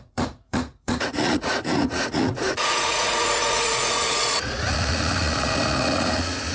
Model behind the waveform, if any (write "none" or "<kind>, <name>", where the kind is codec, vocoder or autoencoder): vocoder, Vocos